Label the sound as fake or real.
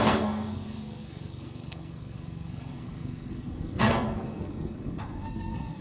fake